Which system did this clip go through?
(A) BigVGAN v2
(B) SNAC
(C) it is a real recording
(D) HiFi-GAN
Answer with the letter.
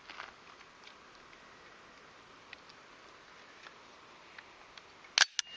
C